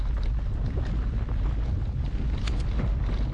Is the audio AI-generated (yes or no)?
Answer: no